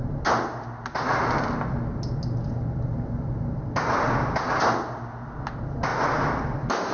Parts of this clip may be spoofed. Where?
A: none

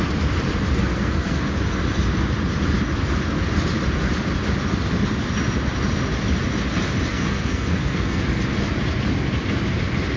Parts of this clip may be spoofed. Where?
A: 0.8-1.5 (codec, SNAC); 7.1-8.2

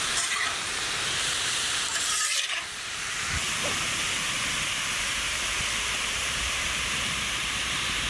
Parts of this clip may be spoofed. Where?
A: 0.0-4.0 (vocoder, BigVGAN v2); 5.0-8.1

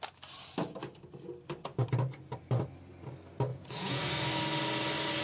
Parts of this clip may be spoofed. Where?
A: 3.5-4.0 (vocoder, Vocos)